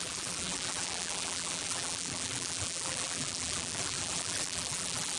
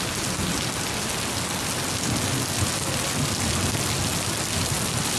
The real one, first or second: second